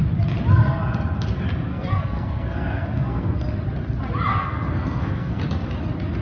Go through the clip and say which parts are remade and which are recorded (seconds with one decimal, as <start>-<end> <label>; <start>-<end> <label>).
0.0-1.7 recorded; 1.7-3.4 remade; 3.4-4.3 recorded; 4.3-5.4 remade; 5.4-6.2 recorded